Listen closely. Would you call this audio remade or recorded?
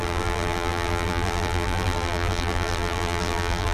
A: remade